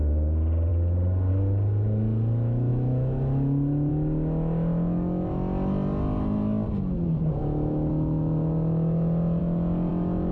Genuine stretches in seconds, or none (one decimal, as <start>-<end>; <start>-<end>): 0.0-2.7; 3.9-7.4; 7.9-10.3